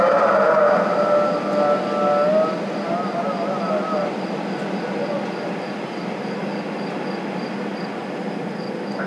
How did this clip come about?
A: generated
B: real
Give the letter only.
B